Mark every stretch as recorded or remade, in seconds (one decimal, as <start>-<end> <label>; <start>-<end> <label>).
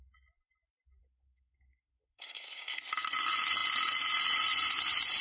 0.0-1.0 recorded; 1.0-2.8 remade; 2.8-5.2 recorded